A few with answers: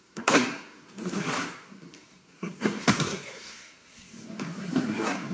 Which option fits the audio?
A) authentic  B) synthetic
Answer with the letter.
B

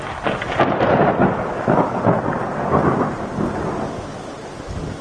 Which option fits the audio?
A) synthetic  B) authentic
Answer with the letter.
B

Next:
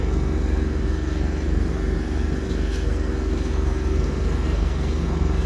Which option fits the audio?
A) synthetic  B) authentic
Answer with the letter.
A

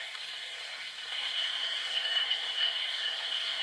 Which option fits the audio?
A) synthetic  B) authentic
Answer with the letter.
A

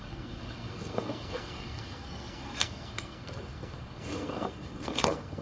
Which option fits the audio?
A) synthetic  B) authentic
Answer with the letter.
A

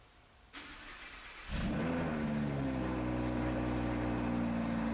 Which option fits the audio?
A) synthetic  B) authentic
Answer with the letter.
B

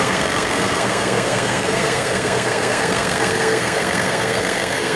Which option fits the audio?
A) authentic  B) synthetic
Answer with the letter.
B